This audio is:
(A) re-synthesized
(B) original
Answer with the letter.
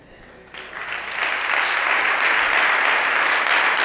B